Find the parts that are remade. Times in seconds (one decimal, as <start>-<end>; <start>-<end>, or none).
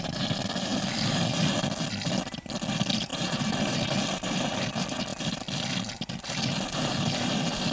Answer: none